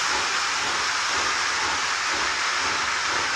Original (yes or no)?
yes